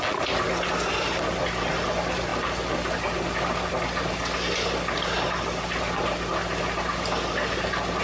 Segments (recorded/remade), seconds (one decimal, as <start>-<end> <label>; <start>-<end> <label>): 0.0-8.0 recorded